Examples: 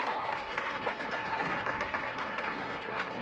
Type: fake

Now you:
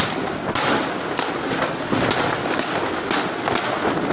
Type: real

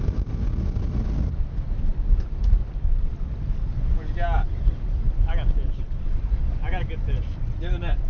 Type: real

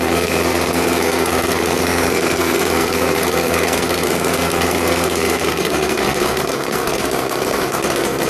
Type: fake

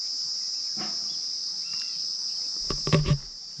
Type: real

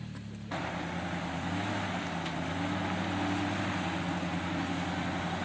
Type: real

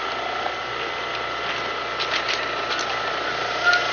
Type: real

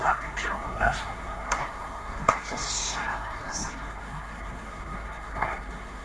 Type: fake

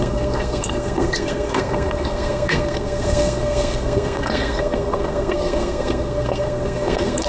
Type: fake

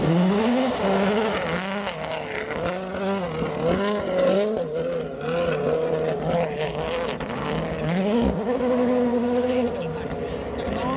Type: real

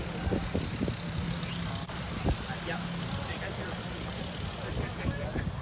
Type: real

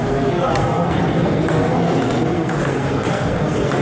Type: fake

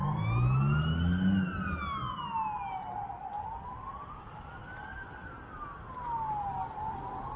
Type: real